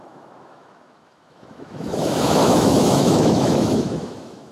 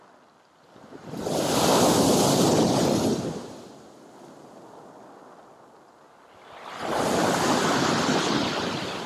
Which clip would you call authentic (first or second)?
second